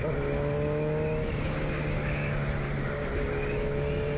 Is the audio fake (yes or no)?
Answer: no